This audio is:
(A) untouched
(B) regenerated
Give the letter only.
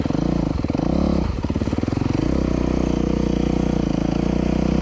A